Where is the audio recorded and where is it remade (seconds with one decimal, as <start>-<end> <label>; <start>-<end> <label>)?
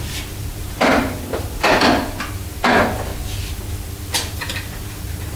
0.0-1.3 remade; 1.3-2.3 recorded; 2.3-3.1 remade; 3.1-4.5 recorded; 4.5-5.4 remade